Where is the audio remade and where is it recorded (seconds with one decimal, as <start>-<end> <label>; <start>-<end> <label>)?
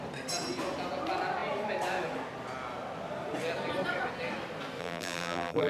0.0-4.8 recorded; 4.8-5.7 remade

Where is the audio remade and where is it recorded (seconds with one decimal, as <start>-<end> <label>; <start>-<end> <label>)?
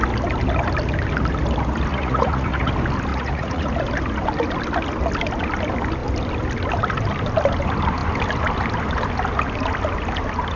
0.0-1.9 recorded; 1.9-2.7 remade; 2.7-3.1 recorded; 3.1-3.7 remade; 3.7-10.6 recorded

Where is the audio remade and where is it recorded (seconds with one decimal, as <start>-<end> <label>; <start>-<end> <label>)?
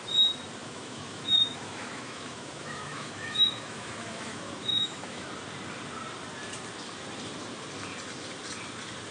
0.0-0.6 recorded; 0.6-5.3 remade; 5.3-9.1 recorded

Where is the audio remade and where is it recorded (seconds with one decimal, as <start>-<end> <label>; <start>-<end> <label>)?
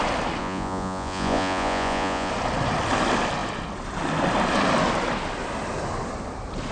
0.0-0.4 recorded; 0.4-2.3 remade; 2.3-6.7 recorded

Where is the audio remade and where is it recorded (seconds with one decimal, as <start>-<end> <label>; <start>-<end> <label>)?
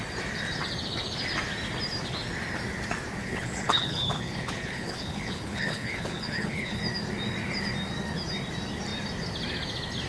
0.0-3.2 recorded; 3.2-6.8 remade; 6.8-10.1 recorded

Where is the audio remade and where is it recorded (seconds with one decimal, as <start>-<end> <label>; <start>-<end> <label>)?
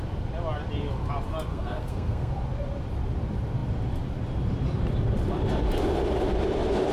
0.0-1.5 recorded; 1.5-2.3 remade; 2.3-6.9 recorded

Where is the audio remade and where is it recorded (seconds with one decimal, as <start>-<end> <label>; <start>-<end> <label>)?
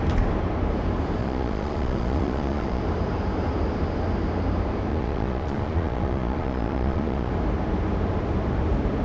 0.0-1.2 recorded; 1.2-2.8 remade; 2.8-4.9 recorded; 4.9-7.3 remade; 7.3-9.0 recorded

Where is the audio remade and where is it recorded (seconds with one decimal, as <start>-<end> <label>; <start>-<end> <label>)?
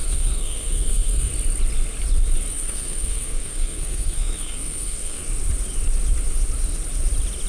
0.0-1.3 remade; 1.3-2.5 recorded; 2.5-5.2 remade; 5.2-7.5 recorded